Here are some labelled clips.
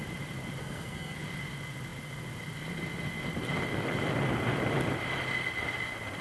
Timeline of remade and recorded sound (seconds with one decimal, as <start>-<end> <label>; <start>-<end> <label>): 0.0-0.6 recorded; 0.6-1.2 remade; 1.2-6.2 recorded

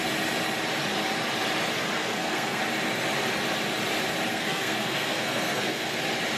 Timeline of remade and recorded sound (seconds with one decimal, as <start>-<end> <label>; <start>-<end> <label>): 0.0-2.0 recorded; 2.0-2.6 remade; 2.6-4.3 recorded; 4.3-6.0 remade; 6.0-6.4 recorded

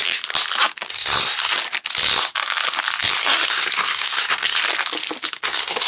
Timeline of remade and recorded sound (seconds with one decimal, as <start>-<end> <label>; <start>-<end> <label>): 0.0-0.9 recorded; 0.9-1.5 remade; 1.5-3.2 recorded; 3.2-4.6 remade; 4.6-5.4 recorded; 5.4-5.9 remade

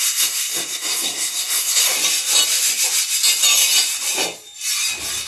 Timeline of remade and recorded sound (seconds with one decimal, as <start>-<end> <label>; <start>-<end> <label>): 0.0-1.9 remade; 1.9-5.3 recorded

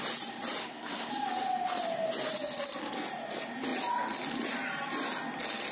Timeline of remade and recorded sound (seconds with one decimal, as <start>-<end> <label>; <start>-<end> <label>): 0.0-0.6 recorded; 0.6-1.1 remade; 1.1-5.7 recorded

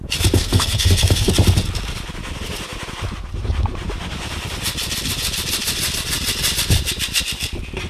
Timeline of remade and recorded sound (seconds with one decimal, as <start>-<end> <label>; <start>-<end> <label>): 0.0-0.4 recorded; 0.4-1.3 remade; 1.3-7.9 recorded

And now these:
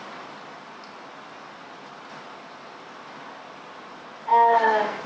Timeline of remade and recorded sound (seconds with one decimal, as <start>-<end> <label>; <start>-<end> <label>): 0.0-4.3 recorded; 4.3-5.1 remade

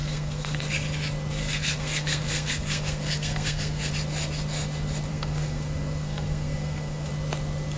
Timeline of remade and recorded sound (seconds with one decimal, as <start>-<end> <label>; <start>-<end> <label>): 0.0-0.6 remade; 0.6-1.4 recorded; 1.4-3.9 remade; 3.9-5.1 recorded; 5.1-7.1 remade; 7.1-7.8 recorded